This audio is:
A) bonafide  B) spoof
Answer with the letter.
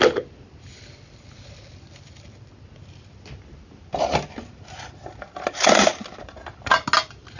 A